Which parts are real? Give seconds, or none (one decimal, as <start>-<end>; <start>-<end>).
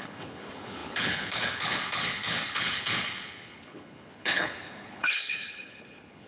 none